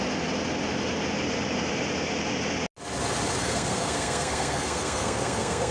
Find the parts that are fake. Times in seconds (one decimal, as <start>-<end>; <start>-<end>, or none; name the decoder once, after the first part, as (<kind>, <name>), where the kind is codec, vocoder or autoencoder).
3.4-5.7 (codec, SNAC)